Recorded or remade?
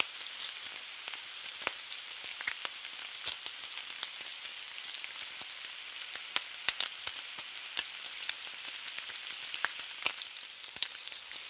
recorded